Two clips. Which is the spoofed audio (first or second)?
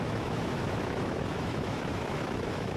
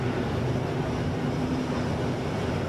first